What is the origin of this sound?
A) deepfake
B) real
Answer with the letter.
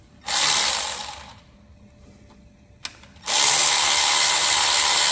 B